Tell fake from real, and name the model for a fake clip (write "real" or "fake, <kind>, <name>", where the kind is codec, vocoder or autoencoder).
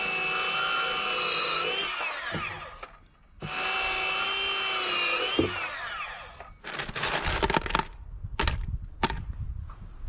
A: real